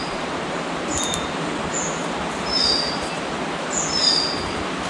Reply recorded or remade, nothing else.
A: recorded